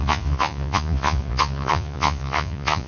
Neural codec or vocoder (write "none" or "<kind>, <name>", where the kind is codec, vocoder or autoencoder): vocoder, Vocos